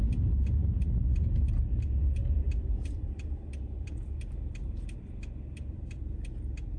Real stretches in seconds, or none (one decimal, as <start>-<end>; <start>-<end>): 0.0-2.2; 6.3-6.8